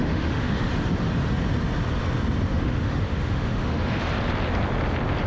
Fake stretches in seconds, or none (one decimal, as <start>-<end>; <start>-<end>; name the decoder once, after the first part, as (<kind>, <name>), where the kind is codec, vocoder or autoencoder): 0.0-0.7 (autoencoder, DAC-VAE); 2.5-4.0